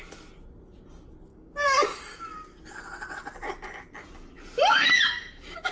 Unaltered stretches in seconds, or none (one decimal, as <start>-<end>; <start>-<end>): 0.0-1.3; 2.2-4.7